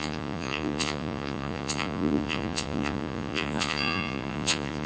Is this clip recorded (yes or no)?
no